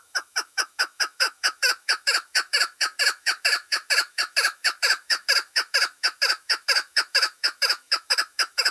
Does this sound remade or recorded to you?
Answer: remade